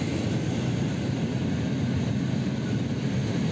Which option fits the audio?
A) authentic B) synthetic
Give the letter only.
A